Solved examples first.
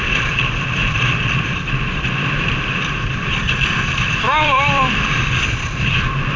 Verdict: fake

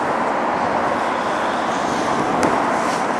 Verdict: real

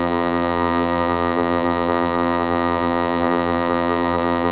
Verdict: fake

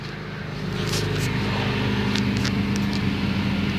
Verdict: real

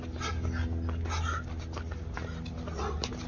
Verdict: real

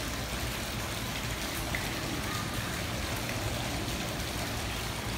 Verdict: real